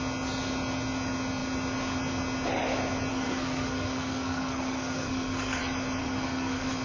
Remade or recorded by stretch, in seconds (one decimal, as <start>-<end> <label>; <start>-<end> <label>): 0.0-3.1 recorded; 3.1-5.6 remade; 5.6-6.0 recorded; 6.0-6.8 remade